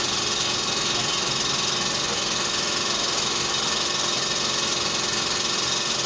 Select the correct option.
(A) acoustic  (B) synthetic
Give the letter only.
A